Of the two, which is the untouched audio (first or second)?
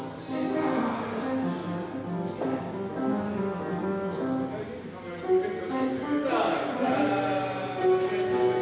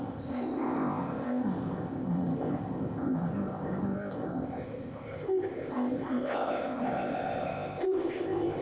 first